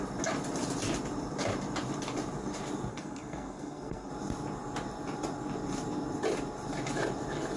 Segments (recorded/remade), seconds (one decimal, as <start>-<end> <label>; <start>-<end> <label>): 0.0-2.9 recorded; 2.9-4.1 remade; 4.1-7.6 recorded